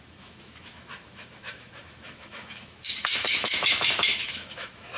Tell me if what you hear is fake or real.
fake